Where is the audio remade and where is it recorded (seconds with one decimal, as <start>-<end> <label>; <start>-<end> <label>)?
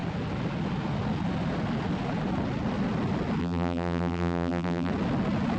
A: 0.0-3.4 recorded; 3.4-4.9 remade; 4.9-5.6 recorded